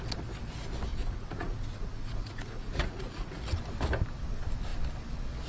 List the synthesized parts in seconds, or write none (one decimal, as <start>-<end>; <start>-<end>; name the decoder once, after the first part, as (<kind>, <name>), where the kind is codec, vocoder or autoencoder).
0.9-3.4 (vocoder, Vocos)